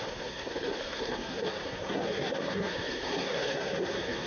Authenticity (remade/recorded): remade